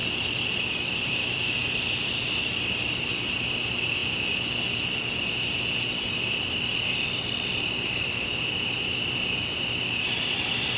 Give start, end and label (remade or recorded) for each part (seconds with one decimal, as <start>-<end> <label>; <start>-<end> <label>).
0.0-10.8 recorded